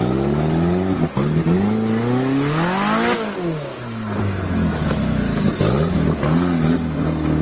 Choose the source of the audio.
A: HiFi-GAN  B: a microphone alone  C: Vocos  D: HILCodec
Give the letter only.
B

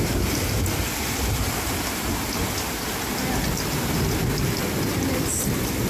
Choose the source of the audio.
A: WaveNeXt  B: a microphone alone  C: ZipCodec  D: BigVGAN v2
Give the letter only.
B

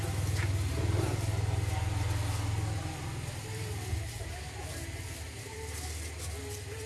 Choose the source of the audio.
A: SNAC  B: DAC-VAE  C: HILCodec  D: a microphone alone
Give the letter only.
D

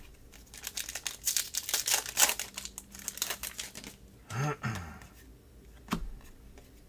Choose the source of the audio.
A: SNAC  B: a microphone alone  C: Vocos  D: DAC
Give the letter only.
B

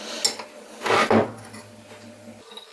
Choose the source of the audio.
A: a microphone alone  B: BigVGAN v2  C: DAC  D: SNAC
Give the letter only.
A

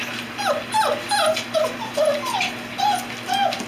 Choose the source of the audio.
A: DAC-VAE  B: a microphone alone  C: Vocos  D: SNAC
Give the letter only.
B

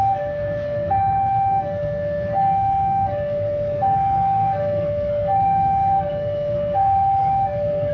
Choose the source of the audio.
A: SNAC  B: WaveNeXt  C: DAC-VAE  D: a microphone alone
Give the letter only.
A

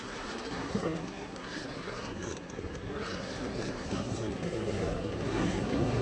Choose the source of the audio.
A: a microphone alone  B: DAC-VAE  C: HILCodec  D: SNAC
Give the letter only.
D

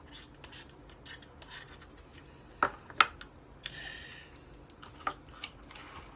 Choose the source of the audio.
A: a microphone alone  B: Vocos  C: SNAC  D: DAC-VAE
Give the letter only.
A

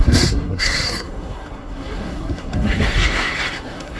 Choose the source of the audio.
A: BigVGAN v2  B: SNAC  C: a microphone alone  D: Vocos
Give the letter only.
B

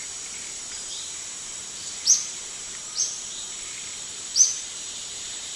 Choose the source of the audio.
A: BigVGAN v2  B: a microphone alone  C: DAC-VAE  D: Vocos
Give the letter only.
A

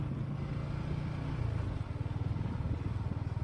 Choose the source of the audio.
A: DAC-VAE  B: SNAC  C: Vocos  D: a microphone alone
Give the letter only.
D